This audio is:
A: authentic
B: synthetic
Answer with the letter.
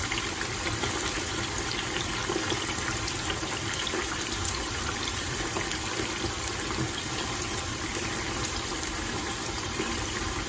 B